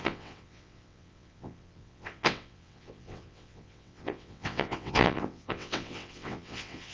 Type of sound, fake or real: fake